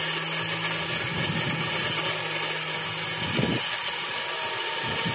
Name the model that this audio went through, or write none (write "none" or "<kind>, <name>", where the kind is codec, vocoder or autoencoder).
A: none